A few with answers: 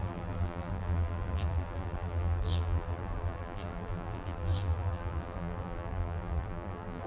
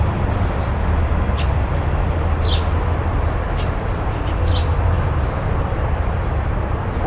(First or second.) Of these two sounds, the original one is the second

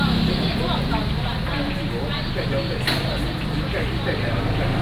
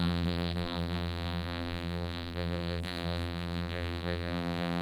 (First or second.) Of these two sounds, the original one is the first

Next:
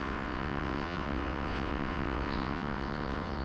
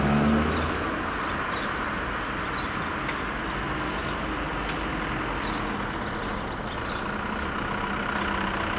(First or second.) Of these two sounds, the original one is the second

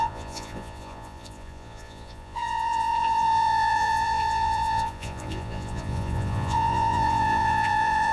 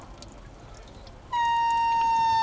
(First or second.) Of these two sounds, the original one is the second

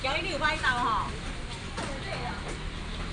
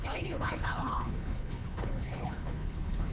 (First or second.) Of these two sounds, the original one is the first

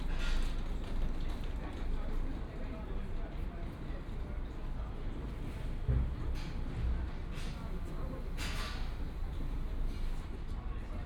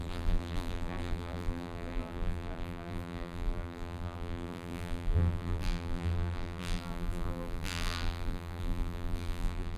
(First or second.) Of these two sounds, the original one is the first